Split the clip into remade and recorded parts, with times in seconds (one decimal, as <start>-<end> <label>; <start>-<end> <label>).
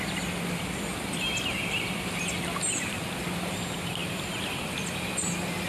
0.0-5.7 recorded